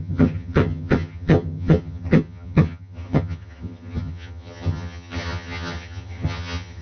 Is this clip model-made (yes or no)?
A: yes